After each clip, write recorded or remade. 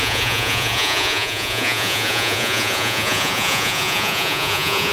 remade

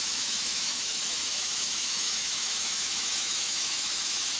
remade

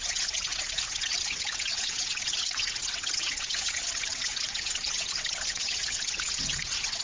remade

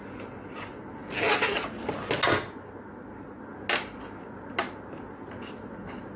recorded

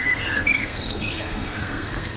remade